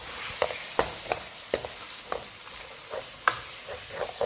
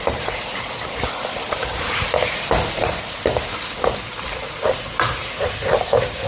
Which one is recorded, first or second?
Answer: first